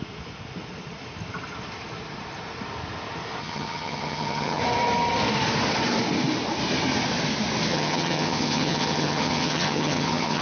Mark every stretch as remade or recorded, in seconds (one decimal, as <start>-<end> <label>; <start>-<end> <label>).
0.0-3.4 recorded; 3.4-4.6 remade; 4.6-7.7 recorded; 7.7-10.4 remade